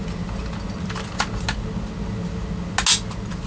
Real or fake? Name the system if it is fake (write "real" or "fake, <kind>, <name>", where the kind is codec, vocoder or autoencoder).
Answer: real